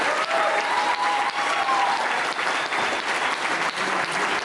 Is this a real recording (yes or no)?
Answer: yes